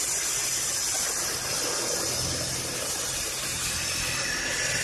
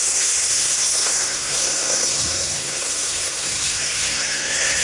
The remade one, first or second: second